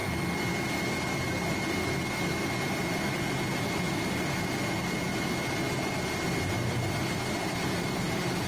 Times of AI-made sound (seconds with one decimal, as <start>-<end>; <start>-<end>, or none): none